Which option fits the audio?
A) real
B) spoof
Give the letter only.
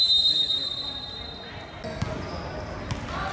A